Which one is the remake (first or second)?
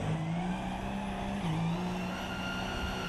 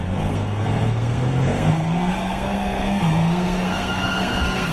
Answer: second